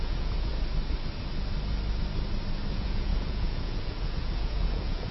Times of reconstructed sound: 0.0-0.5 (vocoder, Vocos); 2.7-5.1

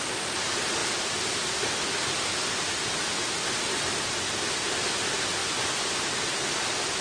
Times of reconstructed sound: 5.4-6.0 (vocoder, Vocos)

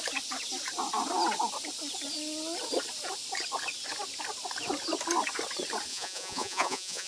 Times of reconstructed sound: 5.9-7.1 (vocoder, Vocos)

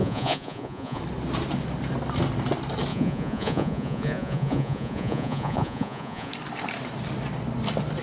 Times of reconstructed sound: 0.0-1.0 (vocoder, Vocos); 2.9-6.3

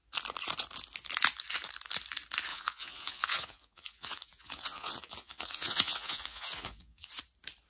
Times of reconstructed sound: 2.5-7.1 (vocoder, Vocos)

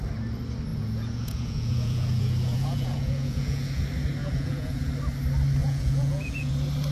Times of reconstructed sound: 0.7-3.8 (vocoder, Vocos); 4.2-4.9; 5.6-6.5

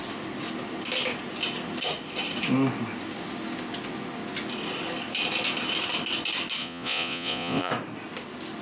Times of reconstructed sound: 6.6-7.7 (vocoder, Vocos)

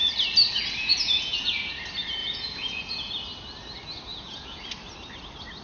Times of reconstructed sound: 0.9-1.7 (vocoder, Vocos); 2.2-3.1; 4.1-4.6